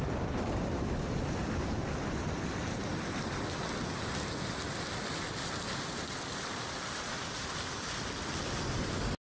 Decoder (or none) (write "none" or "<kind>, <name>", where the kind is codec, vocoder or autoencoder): none